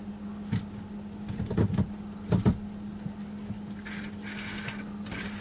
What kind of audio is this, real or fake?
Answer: real